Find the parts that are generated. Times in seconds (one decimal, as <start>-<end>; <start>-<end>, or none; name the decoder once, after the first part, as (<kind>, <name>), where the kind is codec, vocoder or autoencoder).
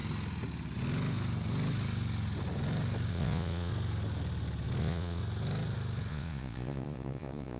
3.1-3.7 (vocoder, Vocos); 4.8-5.2; 6.1-7.6